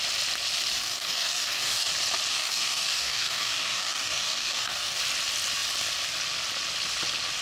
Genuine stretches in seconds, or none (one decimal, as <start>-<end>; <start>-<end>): 0.0-0.7; 1.9-2.3; 5.0-7.4